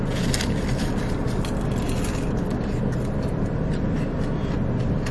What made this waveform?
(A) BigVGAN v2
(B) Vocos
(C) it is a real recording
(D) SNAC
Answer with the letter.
C